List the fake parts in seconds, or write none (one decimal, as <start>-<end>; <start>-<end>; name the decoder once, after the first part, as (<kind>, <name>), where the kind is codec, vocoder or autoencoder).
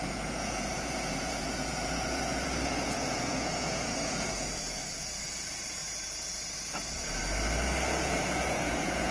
0.0-5.8 (vocoder, Vocos); 6.7-7.2; 8.0-9.1